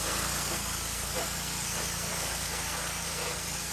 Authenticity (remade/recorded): remade